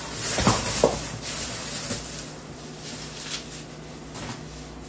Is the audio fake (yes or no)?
no